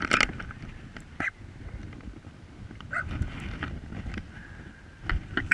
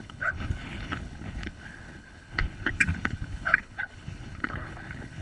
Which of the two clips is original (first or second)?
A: first